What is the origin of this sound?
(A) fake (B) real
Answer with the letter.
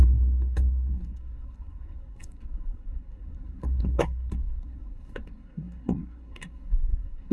A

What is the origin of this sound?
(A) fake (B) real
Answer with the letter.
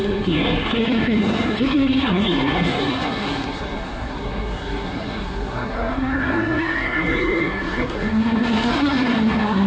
A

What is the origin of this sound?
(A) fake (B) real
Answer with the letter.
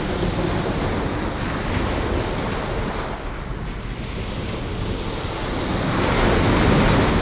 B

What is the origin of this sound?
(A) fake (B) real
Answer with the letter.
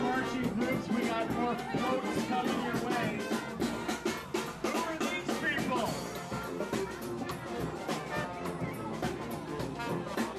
B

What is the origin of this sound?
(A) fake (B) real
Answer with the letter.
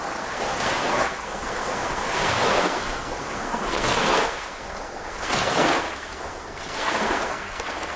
A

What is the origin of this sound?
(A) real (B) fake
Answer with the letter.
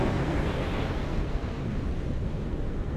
B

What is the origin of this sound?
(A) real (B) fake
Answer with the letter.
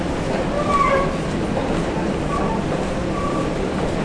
A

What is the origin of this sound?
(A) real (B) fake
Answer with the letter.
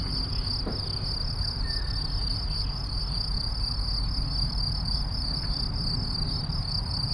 A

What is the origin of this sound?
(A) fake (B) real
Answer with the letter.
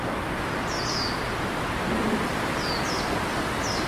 B